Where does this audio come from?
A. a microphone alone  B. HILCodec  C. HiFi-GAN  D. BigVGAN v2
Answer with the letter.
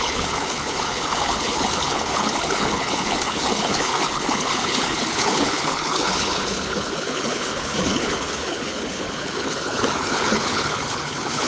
B